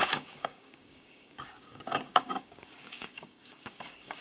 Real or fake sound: fake